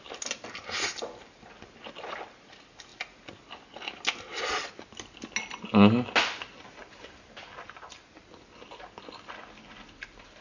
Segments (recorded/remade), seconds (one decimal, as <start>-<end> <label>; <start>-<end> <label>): 0.0-10.4 recorded